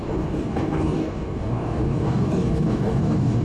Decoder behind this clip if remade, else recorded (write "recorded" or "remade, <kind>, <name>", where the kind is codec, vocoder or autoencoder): remade, codec, DAC